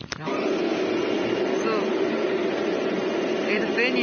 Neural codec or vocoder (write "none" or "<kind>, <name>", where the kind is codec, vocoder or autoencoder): none